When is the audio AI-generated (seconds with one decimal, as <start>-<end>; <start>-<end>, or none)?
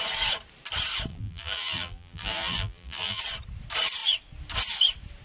1.1-3.2